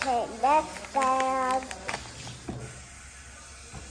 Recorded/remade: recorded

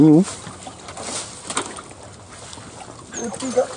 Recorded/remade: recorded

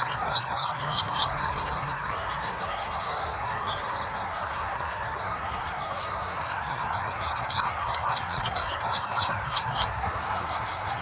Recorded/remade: remade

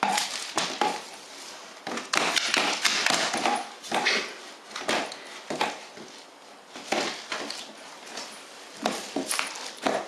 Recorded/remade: recorded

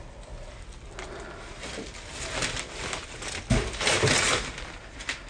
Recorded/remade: recorded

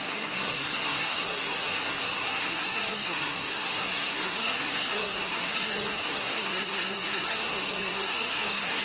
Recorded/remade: remade